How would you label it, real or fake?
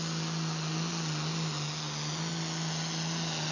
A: real